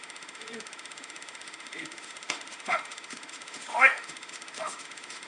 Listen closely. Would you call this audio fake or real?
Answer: fake